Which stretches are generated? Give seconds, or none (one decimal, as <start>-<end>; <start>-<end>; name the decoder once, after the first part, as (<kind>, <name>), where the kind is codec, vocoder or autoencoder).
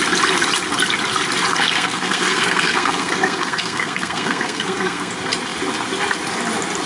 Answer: 1.5-5.1 (codec, SNAC)